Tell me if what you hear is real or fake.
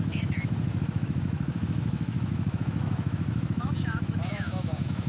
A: fake